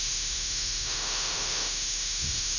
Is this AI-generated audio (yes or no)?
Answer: yes